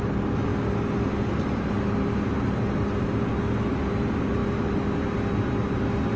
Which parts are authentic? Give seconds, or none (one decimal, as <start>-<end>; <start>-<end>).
0.0-6.2